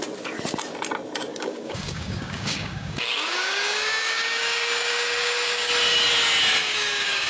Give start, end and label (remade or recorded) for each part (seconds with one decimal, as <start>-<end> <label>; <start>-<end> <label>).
0.0-1.3 recorded; 1.3-5.7 remade; 5.7-6.6 recorded; 6.6-7.3 remade